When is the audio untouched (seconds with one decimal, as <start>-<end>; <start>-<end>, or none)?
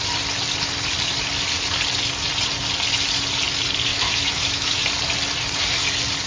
0.0-3.9; 4.8-6.3